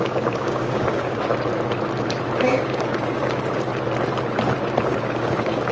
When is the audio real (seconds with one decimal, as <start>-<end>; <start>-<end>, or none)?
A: 1.3-2.4; 3.7-5.0